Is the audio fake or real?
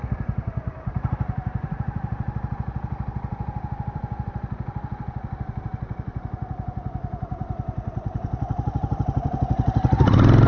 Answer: fake